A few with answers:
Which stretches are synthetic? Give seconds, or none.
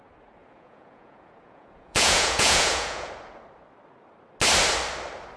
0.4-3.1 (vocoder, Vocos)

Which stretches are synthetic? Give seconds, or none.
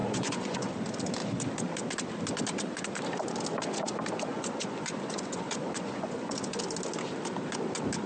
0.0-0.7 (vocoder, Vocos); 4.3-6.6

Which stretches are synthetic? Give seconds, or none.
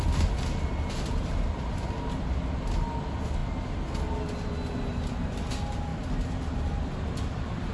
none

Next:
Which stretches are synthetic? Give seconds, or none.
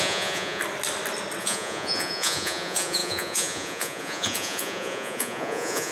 0.0-0.6 (vocoder, Vocos); 1.4-5.9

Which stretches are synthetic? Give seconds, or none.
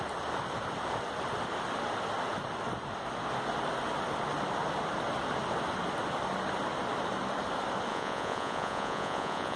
7.9-9.6 (vocoder, Vocos)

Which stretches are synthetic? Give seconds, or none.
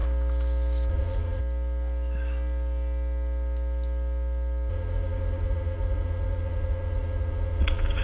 0.9-1.4 (vocoder, Vocos); 4.7-8.0